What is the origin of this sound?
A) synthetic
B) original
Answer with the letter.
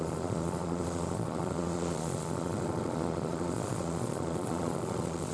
A